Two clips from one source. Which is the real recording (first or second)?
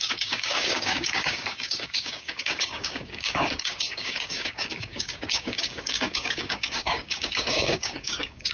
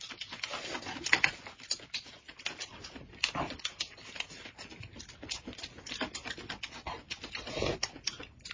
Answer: second